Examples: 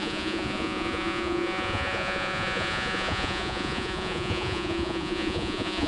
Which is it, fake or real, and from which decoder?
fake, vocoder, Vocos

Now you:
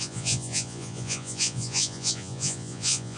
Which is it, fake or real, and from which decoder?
fake, vocoder, Vocos